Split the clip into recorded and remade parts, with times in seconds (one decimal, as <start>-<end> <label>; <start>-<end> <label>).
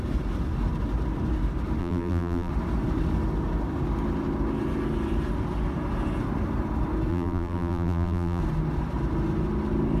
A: 0.0-1.8 recorded; 1.8-2.5 remade; 2.5-7.1 recorded; 7.1-8.4 remade; 8.4-10.0 recorded